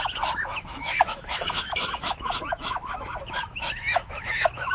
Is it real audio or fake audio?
fake